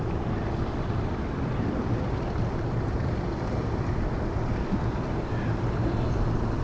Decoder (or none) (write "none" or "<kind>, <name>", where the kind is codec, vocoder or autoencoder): vocoder, BigVGAN v2